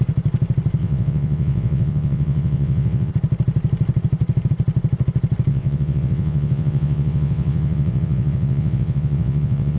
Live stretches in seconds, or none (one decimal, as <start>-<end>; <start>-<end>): 0.0-0.8; 3.1-5.5